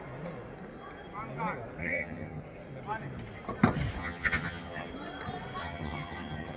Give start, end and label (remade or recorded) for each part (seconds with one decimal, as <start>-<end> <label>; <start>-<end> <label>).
0.0-1.8 recorded; 1.8-2.4 remade; 2.4-4.0 recorded; 4.0-4.9 remade; 4.9-5.6 recorded; 5.6-6.6 remade